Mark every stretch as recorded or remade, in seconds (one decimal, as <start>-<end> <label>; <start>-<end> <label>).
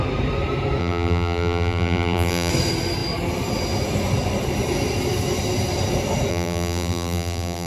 0.0-0.8 recorded; 0.8-2.5 remade; 2.5-6.3 recorded; 6.3-7.7 remade